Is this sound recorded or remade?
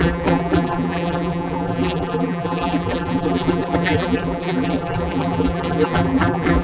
remade